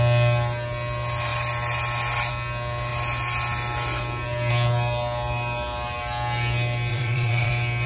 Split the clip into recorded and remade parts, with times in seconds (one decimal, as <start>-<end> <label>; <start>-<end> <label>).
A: 0.0-6.9 recorded; 6.9-7.5 remade; 7.5-7.9 recorded